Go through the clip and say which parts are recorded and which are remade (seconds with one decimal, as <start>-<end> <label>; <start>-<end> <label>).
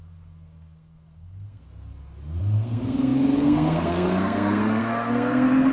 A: 0.0-1.7 remade; 1.7-2.4 recorded; 2.4-5.7 remade